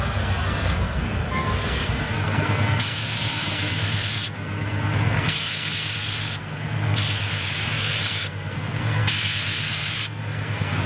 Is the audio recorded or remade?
remade